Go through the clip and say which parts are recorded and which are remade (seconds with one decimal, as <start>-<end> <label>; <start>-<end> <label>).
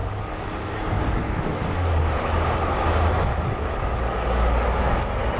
0.0-2.4 remade; 2.4-3.3 recorded; 3.3-5.0 remade; 5.0-5.4 recorded